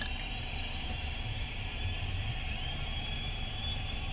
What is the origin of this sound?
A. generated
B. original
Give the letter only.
A